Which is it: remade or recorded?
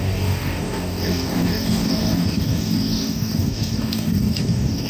remade